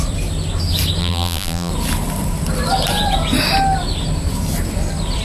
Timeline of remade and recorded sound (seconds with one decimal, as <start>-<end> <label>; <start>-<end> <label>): 0.0-1.0 recorded; 1.0-1.7 remade; 1.7-5.2 recorded